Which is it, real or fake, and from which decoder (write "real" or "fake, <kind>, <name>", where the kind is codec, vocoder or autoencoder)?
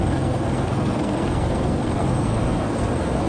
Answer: fake, codec, SNAC